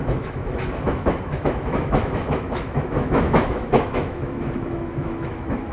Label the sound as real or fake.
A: fake